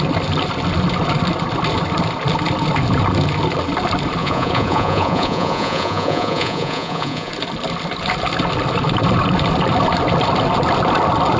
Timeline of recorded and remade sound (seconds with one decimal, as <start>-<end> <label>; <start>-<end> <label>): 0.0-4.2 recorded; 4.2-7.3 remade; 7.3-11.4 recorded